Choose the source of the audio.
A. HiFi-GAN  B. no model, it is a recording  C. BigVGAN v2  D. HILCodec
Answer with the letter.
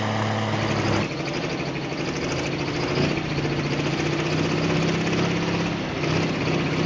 B